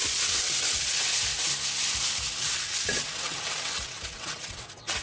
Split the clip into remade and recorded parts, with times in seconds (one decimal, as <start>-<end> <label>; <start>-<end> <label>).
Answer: 0.0-1.1 remade; 1.1-2.4 recorded; 2.4-5.0 remade